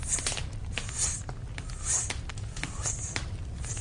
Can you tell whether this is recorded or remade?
recorded